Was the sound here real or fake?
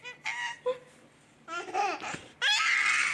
real